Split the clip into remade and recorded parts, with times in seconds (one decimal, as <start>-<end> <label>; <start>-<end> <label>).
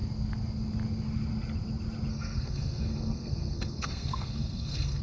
0.0-2.1 recorded; 2.1-5.0 remade